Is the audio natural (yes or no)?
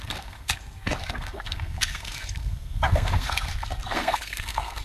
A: no